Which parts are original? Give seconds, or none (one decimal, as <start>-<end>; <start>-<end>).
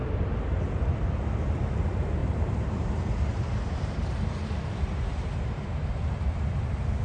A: 0.0-2.2; 5.9-7.0